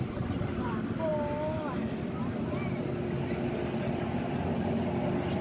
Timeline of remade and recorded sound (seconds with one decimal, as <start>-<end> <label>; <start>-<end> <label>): 0.0-5.4 recorded